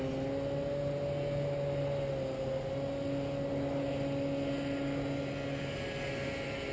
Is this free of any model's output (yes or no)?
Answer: yes